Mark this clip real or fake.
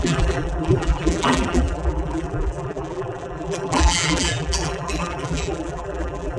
fake